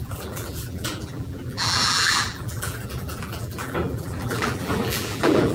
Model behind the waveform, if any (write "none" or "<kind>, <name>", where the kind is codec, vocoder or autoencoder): vocoder, BigVGAN v2